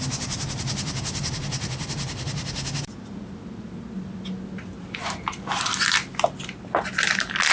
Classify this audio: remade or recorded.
recorded